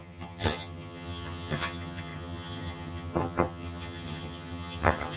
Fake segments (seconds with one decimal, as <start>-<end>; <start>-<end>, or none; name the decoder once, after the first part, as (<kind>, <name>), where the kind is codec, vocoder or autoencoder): 0.0-5.2 (vocoder, HiFi-GAN)